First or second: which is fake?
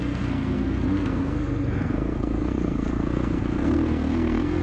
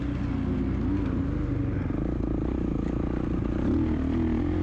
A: first